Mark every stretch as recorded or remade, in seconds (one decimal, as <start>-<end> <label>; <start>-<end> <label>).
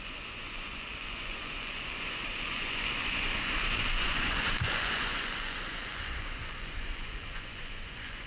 0.0-8.3 remade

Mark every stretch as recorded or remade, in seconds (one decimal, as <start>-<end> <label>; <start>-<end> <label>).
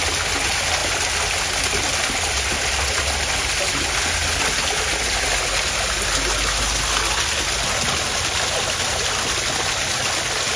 0.0-10.6 recorded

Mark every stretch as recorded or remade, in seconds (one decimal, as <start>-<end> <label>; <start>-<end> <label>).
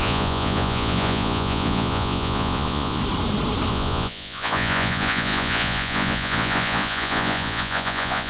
0.0-3.0 remade; 3.0-3.7 recorded; 3.7-8.3 remade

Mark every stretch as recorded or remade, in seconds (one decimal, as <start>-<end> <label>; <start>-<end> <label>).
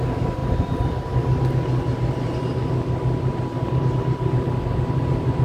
0.0-5.4 recorded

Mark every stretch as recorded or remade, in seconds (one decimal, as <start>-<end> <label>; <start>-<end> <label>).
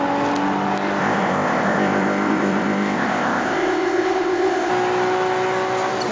0.0-1.0 recorded; 1.0-4.7 remade; 4.7-6.1 recorded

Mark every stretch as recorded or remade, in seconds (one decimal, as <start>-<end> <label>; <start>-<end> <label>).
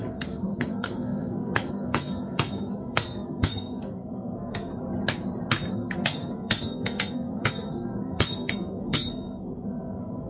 0.0-4.7 remade; 4.7-5.7 recorded; 5.7-10.3 remade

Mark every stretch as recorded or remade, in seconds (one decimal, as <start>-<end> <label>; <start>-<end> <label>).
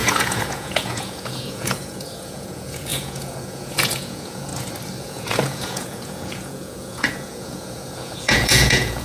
0.0-4.5 remade; 4.5-5.0 recorded; 5.0-9.0 remade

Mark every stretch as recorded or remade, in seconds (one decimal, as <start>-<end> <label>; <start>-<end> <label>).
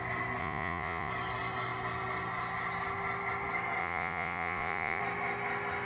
0.0-0.4 recorded; 0.4-1.1 remade; 1.1-3.8 recorded; 3.8-5.0 remade; 5.0-5.9 recorded